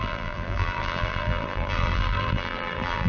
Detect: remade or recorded remade